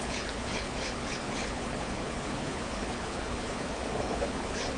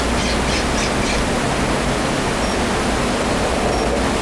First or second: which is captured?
second